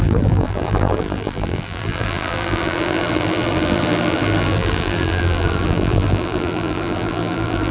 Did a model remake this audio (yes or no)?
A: yes